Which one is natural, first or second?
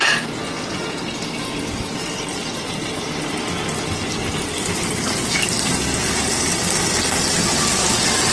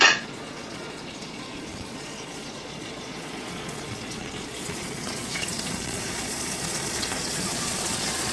first